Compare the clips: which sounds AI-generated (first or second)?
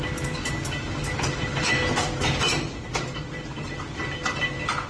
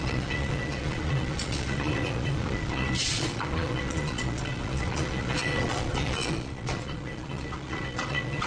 second